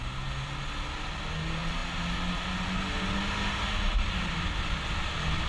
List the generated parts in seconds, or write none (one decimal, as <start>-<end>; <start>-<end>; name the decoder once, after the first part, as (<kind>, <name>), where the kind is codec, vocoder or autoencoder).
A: none

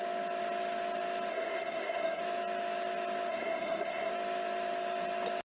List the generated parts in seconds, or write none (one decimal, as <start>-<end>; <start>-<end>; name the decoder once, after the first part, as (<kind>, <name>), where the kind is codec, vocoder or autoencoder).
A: 1.3-2.2 (codec, SNAC); 3.3-4.1